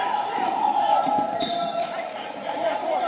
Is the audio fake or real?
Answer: fake